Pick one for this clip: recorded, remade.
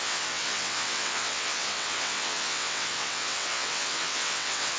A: remade